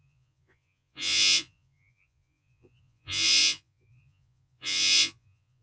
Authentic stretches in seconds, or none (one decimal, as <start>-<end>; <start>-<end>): none

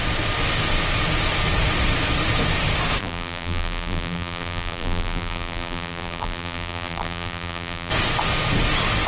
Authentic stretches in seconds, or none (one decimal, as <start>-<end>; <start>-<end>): 0.0-3.0; 7.9-9.1

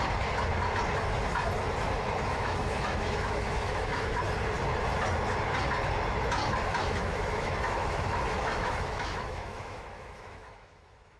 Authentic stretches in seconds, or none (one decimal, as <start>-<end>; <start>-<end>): 0.0-2.2; 4.2-6.8

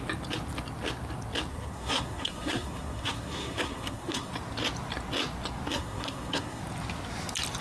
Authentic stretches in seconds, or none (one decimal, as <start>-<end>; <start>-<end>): 0.0-1.5; 4.3-5.7; 6.6-7.6

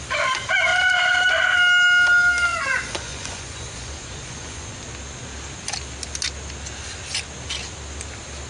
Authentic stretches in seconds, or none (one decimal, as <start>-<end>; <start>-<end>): 0.0-2.5; 4.8-8.5

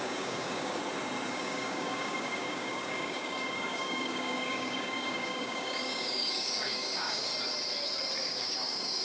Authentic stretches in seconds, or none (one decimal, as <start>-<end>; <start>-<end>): 0.8-1.3; 7.3-8.2

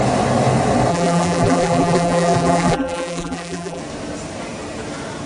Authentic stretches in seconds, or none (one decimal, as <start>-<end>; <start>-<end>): 0.0-0.9; 3.8-5.3

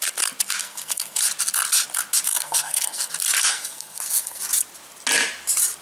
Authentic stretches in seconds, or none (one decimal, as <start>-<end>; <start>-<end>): 0.0-0.6; 1.2-2.3; 3.1-3.5; 4.4-5.8